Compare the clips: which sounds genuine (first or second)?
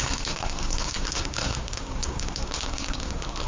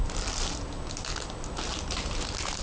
second